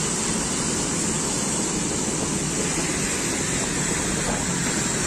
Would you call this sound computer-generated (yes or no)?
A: no